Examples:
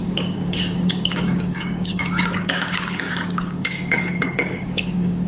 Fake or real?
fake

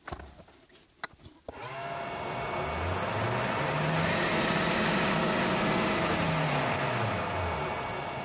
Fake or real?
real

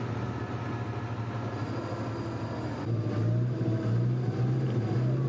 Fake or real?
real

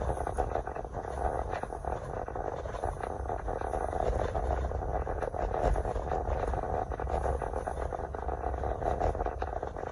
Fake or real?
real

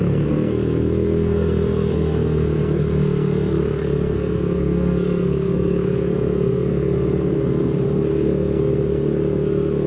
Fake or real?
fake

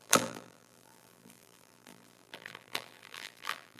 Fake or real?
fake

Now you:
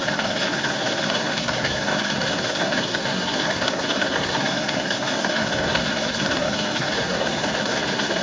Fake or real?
fake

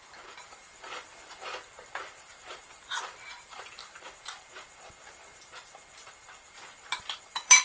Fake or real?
fake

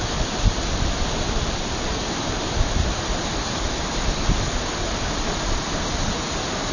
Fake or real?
real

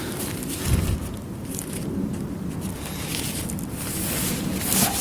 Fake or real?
real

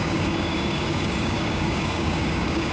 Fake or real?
fake